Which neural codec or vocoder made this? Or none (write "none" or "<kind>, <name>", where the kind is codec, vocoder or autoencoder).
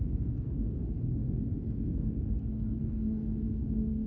codec, SNAC